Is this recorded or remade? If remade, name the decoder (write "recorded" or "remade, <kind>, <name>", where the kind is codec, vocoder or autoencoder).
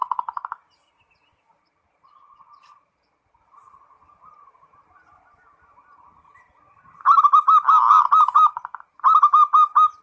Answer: recorded